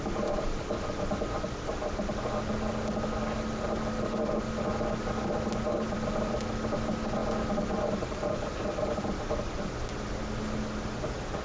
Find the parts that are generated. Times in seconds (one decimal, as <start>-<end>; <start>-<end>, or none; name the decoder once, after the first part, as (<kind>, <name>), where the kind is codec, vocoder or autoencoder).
none